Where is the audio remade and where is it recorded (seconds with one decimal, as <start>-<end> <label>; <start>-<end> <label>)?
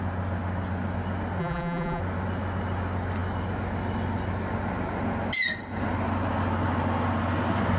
0.0-1.4 recorded; 1.4-2.0 remade; 2.0-7.8 recorded